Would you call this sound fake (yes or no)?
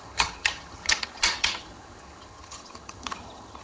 yes